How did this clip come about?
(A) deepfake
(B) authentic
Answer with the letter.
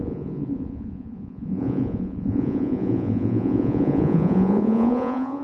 A